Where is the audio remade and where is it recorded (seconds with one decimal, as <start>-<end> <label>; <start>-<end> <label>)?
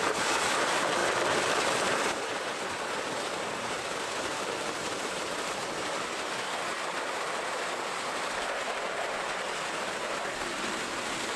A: 0.0-2.5 remade; 2.5-4.1 recorded; 4.1-5.6 remade; 5.6-8.4 recorded; 8.4-11.4 remade